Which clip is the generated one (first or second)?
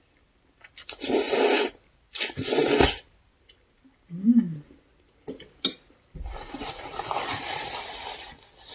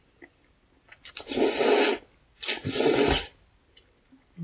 first